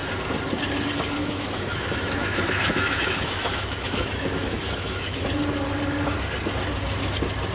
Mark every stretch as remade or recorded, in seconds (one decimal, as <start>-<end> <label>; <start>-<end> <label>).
0.0-1.2 recorded; 1.2-5.2 remade; 5.2-7.5 recorded